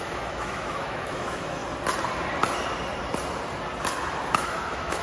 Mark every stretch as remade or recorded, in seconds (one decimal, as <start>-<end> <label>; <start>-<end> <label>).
0.0-1.6 remade; 1.6-4.3 recorded; 4.3-5.0 remade